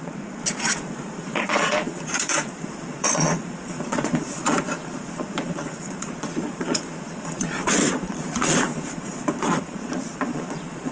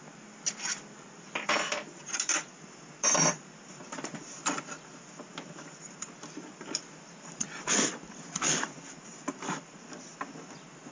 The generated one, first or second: first